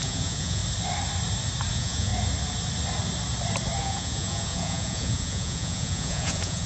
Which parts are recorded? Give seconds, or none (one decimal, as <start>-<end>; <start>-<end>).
0.6-1.7; 2.1-3.8